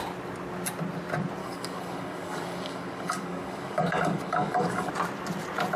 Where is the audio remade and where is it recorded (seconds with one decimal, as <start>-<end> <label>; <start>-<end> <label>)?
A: 0.0-1.4 recorded; 1.4-4.9 remade; 4.9-5.8 recorded